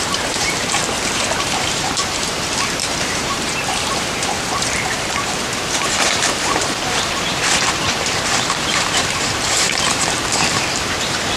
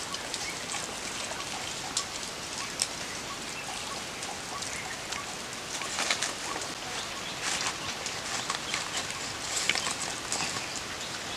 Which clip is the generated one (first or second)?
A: first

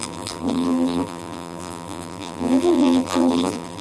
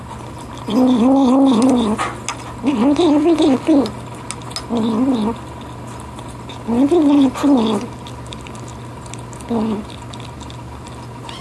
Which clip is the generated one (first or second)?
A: first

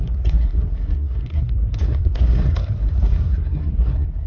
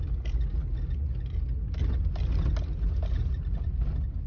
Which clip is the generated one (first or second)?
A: first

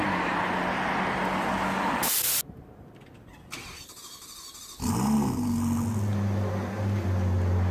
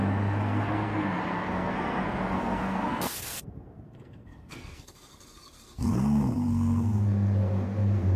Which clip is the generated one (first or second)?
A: second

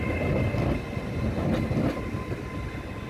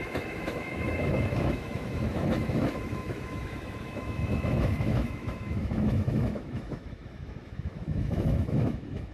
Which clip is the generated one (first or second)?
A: second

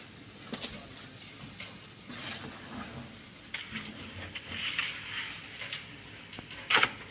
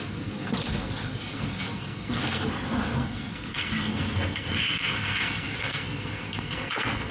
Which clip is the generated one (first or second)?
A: second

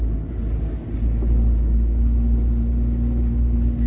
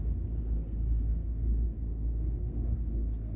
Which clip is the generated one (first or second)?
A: second